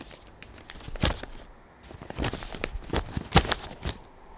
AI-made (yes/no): no